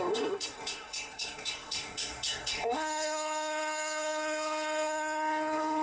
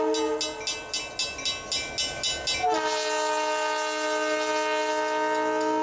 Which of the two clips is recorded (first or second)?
second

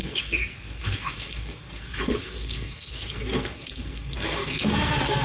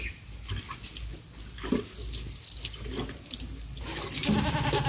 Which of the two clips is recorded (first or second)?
second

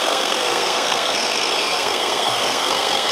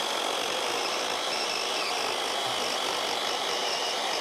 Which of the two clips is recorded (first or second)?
second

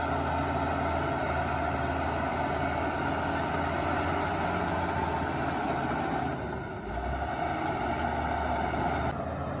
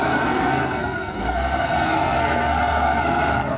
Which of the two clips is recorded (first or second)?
first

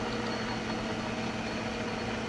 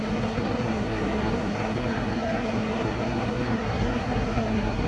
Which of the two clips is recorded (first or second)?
first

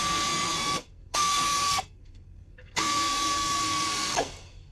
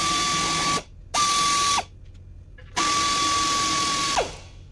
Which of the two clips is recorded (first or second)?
second